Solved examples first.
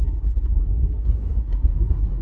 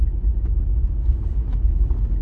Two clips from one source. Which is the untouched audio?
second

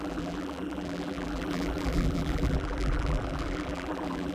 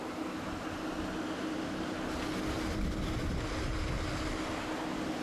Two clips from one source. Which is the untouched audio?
second